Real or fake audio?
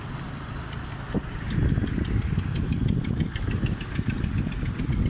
real